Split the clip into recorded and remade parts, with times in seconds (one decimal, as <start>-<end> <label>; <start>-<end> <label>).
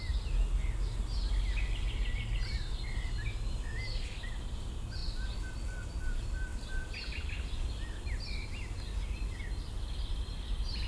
0.0-10.9 recorded